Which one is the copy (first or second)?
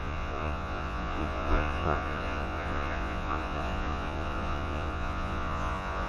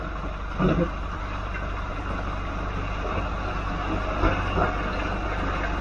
first